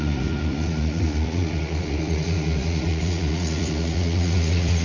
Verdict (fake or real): fake